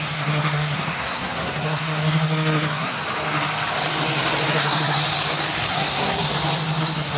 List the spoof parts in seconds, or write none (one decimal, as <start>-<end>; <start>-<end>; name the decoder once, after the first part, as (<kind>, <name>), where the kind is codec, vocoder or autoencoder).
0.0-3.0 (codec, SNAC); 4.5-5.0; 5.7-6.3; 6.8-7.2